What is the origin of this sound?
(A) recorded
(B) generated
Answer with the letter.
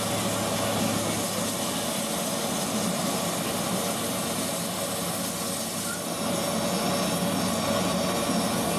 A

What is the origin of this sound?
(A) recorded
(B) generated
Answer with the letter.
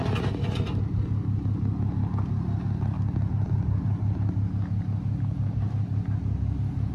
A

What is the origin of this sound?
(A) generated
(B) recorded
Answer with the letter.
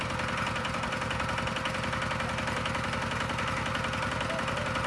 B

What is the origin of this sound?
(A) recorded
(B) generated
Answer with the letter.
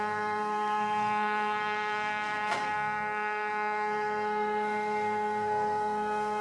B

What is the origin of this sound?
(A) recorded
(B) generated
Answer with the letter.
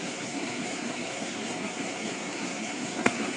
B